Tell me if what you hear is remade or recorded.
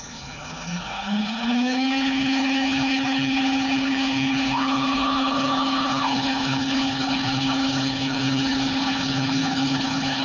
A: remade